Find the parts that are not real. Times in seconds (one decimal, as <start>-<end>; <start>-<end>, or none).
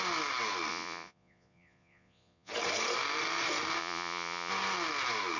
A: 0.7-2.5; 3.8-4.5